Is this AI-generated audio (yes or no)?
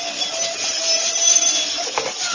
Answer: no